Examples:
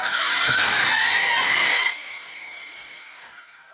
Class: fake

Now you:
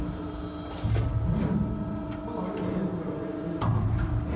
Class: real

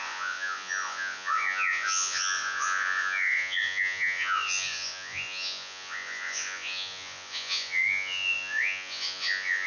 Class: fake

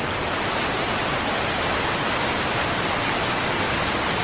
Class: real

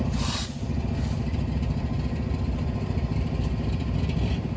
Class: real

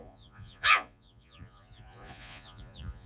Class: fake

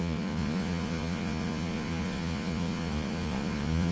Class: fake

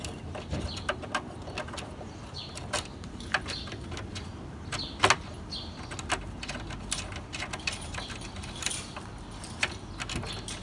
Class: real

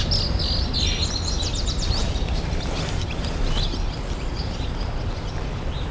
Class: real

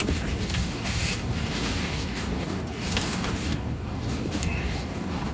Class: fake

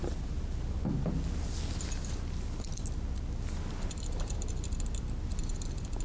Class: real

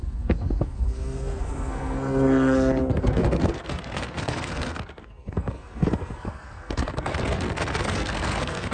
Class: fake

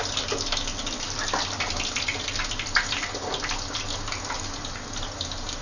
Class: real